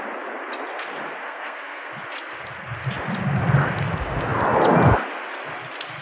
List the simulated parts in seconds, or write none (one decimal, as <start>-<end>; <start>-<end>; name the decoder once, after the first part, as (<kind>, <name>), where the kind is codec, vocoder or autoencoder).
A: 1.2-1.9 (codec, SNAC)